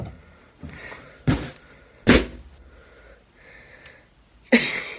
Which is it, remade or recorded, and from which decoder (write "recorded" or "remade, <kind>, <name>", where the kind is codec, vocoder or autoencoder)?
recorded